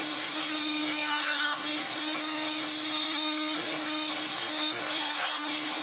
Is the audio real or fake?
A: fake